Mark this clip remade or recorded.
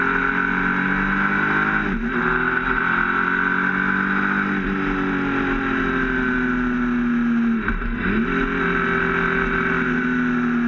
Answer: recorded